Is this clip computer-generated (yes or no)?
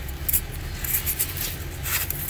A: no